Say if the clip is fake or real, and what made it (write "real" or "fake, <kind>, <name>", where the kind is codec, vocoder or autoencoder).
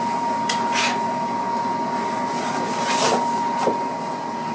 real